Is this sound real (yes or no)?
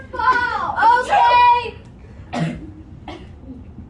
yes